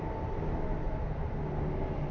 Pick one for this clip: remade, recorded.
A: recorded